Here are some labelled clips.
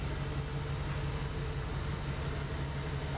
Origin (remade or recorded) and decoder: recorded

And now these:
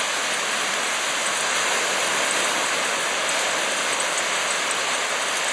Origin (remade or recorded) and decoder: recorded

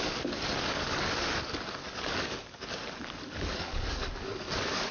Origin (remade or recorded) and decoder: remade, codec, DAC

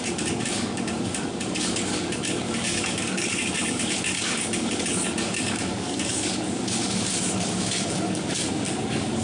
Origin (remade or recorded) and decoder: remade, codec, DAC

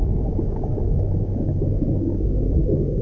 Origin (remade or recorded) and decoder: remade, codec, DAC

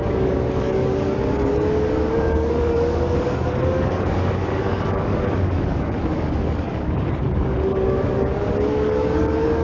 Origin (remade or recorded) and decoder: remade, codec, DAC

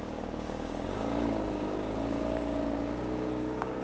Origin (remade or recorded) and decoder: remade, codec, DAC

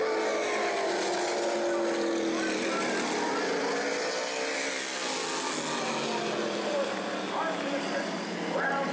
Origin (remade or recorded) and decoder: recorded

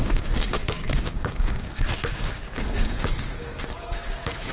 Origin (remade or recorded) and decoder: remade, codec, DAC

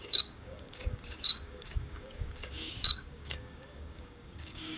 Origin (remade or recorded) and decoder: remade, codec, DAC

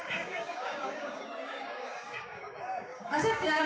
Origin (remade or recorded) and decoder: remade, codec, DAC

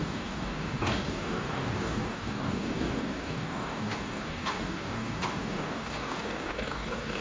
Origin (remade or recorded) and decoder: remade, codec, DAC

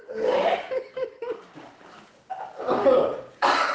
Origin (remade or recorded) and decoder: remade, codec, DAC